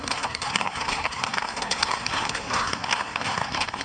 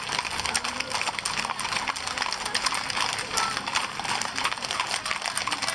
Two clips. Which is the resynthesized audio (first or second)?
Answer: first